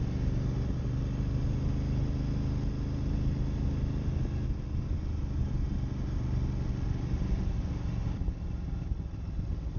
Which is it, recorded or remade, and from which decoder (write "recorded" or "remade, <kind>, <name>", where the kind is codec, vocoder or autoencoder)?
recorded